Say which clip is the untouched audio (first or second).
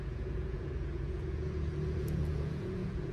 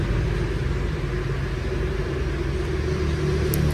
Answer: second